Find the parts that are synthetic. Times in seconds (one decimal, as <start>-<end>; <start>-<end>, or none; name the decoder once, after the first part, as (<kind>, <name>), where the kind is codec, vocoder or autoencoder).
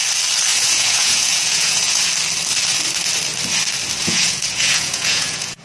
0.5-2.1 (vocoder, Vocos); 4.0-5.6